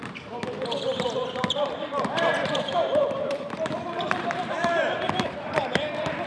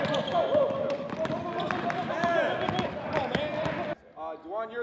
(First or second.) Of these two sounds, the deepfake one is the first